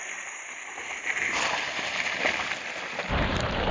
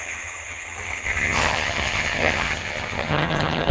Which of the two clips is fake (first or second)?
second